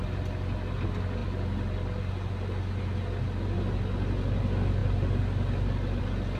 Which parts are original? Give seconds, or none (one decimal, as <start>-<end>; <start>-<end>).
0.0-6.4